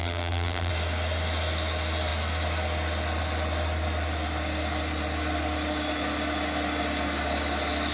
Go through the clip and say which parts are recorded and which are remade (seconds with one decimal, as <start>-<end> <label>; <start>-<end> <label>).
0.0-0.7 remade; 0.7-7.9 recorded